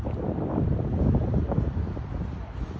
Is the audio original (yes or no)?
yes